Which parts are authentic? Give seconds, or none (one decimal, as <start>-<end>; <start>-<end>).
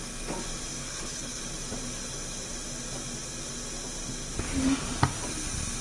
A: 0.0-0.8; 1.4-5.8